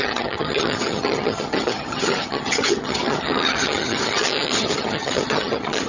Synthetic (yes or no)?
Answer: yes